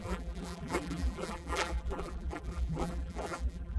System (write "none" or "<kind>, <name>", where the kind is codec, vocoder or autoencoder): vocoder, BigVGAN v2